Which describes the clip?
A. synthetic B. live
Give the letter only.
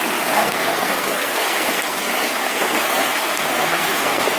A